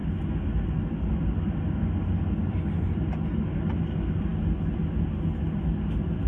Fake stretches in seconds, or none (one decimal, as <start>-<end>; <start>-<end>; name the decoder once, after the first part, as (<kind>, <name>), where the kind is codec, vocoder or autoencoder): none